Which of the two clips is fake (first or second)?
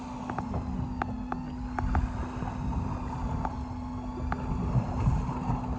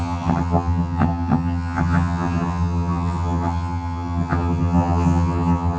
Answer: second